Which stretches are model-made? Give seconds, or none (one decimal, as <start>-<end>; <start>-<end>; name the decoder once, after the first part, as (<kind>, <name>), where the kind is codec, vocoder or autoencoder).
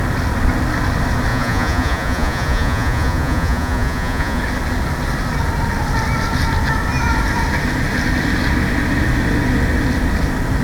1.3-4.4 (vocoder, Vocos)